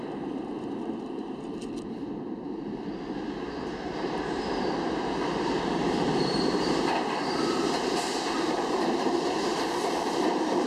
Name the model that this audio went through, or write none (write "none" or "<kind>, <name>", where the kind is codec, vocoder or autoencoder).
vocoder, BigVGAN v2